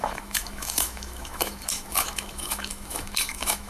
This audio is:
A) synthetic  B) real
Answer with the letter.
A